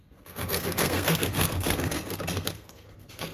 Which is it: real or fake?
fake